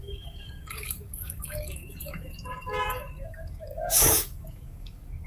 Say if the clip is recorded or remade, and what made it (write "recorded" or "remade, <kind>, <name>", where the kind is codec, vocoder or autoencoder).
remade, codec, DAC